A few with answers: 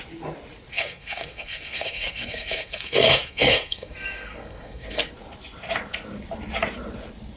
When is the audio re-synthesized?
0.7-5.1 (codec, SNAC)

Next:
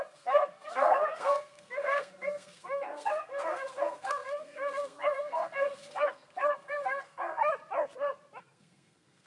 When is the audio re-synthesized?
0.0-7.4 (codec, SNAC); 8.4-9.3